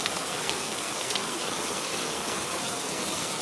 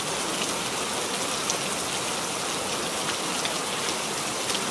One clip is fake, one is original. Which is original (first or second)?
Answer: second